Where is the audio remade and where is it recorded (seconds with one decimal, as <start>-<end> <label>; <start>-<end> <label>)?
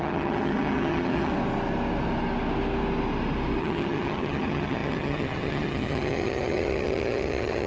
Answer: 0.0-1.3 remade; 1.3-3.6 recorded; 3.6-7.7 remade